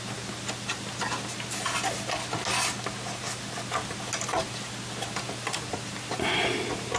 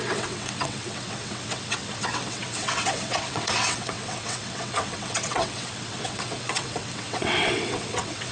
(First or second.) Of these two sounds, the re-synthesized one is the second